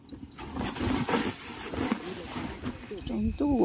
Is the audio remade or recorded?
recorded